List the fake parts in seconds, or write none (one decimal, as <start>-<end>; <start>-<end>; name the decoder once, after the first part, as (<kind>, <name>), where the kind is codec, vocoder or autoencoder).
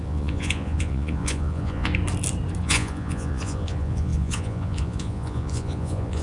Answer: 0.0-1.9 (vocoder, Vocos); 2.6-6.2